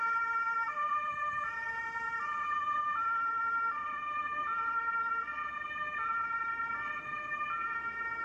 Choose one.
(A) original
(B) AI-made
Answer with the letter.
B